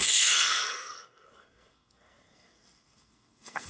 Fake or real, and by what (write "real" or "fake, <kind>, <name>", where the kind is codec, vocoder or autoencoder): fake, codec, SNAC